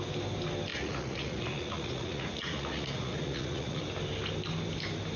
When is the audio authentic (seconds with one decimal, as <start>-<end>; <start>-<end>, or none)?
0.0-0.7; 3.8-5.2